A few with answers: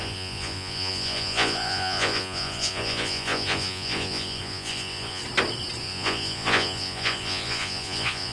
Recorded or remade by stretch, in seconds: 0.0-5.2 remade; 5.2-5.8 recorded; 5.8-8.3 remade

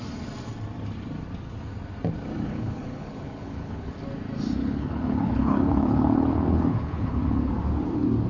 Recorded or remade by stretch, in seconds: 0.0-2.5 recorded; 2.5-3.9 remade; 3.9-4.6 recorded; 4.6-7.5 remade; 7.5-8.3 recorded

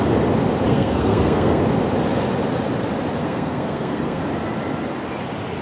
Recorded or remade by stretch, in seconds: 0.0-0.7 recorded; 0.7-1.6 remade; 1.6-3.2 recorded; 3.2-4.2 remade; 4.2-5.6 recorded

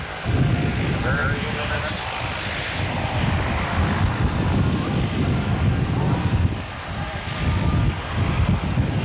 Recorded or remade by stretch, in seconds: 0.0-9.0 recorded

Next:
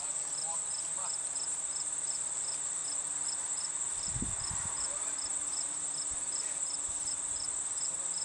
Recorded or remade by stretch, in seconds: 0.0-8.2 recorded

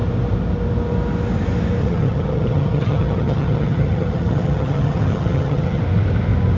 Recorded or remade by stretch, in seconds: 0.0-1.8 recorded; 1.8-5.8 remade; 5.8-6.6 recorded

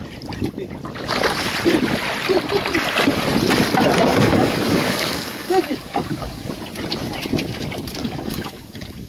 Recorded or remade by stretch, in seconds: 0.0-4.1 recorded; 4.1-6.5 remade; 6.5-8.0 recorded; 8.0-9.1 remade

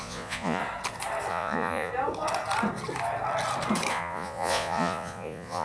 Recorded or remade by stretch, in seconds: 0.0-0.6 remade; 0.6-1.3 recorded; 1.3-1.9 remade; 1.9-3.9 recorded; 3.9-5.6 remade